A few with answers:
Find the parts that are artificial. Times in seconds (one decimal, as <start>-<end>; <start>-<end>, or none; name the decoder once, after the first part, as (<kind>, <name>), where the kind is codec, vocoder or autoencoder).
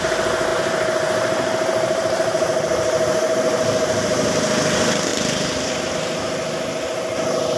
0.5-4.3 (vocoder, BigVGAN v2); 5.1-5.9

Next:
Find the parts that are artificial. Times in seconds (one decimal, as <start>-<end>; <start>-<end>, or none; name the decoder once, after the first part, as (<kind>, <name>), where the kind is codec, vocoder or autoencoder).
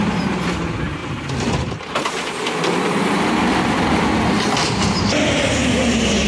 5.6-6.3 (vocoder, BigVGAN v2)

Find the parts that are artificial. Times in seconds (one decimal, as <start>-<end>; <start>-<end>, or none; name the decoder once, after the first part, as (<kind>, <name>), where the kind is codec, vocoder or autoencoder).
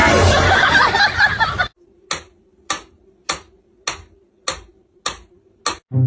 none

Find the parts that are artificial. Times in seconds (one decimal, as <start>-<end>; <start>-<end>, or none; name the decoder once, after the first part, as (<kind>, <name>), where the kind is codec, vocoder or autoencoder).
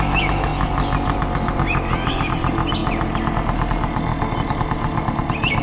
none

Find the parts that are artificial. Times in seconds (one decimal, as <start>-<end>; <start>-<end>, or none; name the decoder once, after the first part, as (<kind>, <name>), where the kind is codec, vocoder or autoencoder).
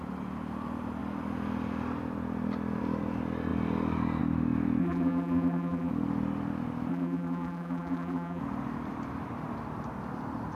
4.8-5.9 (vocoder, BigVGAN v2); 6.9-8.4